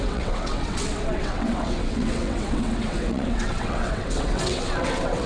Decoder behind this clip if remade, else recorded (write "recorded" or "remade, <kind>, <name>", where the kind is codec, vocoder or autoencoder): remade, vocoder, WaveNeXt